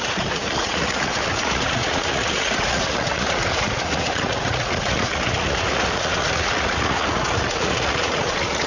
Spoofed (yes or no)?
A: yes